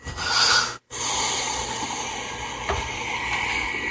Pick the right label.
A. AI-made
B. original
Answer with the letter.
B